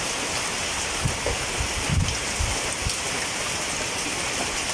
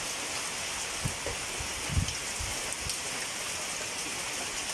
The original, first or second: second